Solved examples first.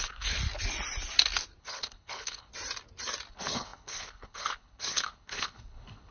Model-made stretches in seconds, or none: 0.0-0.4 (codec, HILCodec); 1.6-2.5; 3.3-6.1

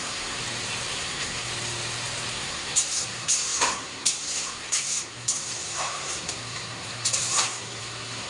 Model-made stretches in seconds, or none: 0.0-0.4 (codec, SNAC); 0.9-1.5; 2.3-8.3